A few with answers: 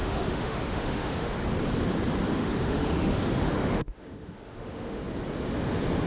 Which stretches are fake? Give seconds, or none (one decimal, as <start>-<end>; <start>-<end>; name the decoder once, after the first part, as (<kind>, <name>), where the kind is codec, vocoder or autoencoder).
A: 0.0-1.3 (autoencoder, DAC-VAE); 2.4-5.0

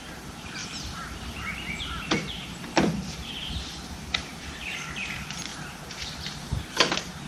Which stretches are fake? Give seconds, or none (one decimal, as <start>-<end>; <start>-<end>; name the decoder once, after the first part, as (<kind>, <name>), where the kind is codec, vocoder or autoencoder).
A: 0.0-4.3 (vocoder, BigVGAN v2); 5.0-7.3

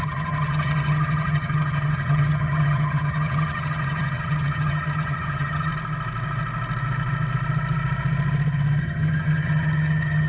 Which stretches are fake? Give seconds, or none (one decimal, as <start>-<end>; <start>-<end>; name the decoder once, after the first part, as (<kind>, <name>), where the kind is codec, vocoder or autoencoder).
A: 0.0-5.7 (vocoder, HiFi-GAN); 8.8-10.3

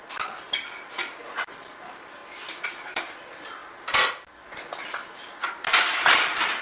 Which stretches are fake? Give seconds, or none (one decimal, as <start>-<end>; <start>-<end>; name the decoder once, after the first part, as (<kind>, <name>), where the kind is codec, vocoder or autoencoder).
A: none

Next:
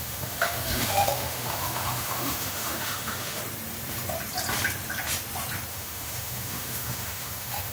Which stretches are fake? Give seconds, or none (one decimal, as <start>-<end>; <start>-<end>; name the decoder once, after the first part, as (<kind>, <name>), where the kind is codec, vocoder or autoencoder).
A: 0.0-3.4 (autoencoder, DAC-VAE); 5.7-7.7

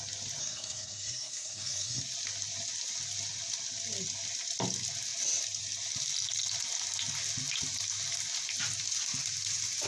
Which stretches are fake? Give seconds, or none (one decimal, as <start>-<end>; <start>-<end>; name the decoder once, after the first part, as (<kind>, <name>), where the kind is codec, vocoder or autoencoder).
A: 0.4-2.0 (codec, SNAC)